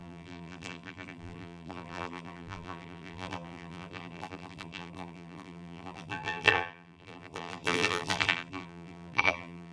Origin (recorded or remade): remade